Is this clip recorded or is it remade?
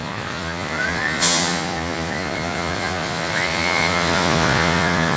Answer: remade